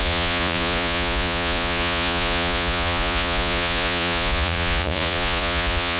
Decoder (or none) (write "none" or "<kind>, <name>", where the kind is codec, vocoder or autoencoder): vocoder, Vocos